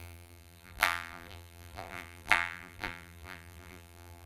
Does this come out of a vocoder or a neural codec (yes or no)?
yes